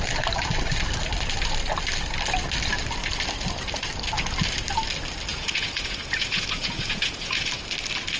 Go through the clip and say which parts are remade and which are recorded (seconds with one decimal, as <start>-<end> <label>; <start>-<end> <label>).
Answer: 0.0-5.3 recorded; 5.3-7.5 remade; 7.5-8.2 recorded